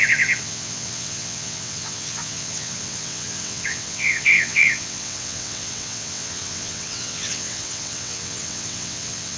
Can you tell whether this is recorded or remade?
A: remade